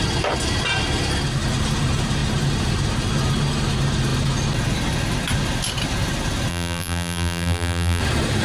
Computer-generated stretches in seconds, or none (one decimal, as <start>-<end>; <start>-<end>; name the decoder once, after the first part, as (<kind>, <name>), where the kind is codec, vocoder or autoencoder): 6.5-8.0 (vocoder, BigVGAN v2)